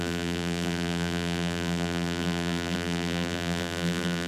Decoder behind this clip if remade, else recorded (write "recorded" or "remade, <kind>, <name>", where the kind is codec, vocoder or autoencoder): remade, vocoder, BigVGAN v2